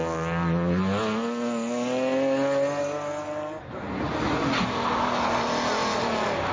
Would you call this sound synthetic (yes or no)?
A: no